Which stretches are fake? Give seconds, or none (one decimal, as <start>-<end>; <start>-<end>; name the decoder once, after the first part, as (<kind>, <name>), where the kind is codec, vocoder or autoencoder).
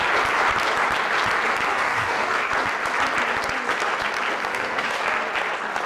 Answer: 1.7-2.5 (codec, DAC); 4.5-5.0